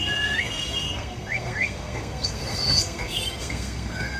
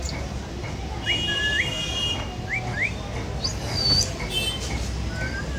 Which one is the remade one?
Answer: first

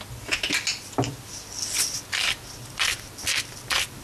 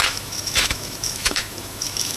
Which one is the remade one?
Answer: second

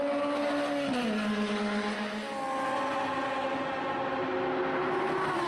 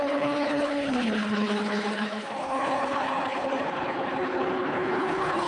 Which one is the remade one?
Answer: second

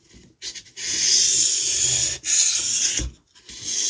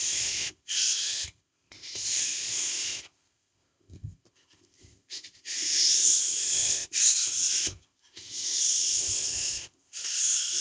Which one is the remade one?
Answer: second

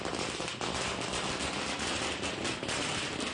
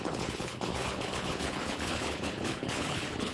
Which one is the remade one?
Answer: second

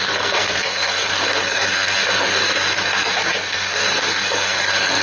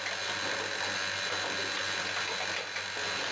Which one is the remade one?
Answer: first